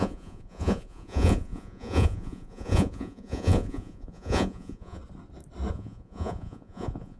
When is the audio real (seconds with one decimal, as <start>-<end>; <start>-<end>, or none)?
5.0-5.7